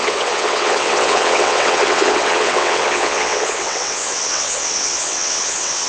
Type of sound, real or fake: fake